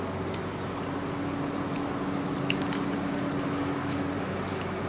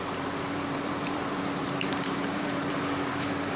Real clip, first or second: first